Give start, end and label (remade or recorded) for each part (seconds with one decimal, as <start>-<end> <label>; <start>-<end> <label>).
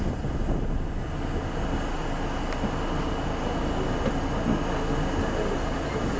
0.0-6.2 recorded